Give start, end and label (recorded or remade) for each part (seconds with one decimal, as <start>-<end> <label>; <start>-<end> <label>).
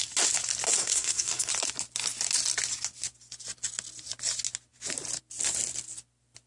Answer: 0.0-0.8 recorded; 0.8-1.5 remade; 1.5-6.5 recorded